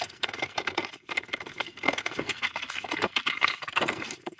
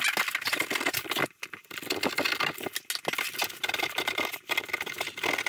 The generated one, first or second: first